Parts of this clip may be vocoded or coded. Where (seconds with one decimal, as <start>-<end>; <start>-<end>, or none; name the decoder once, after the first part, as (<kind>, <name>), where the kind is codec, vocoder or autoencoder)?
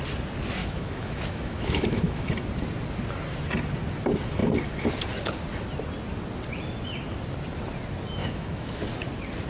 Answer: 0.6-2.3 (autoencoder, DAC-VAE); 8.2-8.8